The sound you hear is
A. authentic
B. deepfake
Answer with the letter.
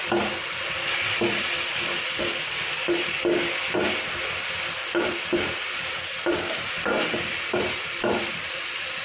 A